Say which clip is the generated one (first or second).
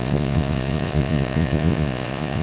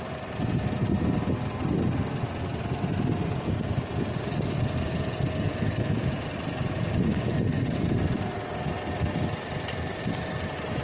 first